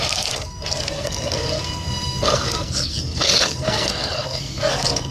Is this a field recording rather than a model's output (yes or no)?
no